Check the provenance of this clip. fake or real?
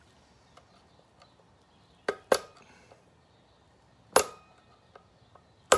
real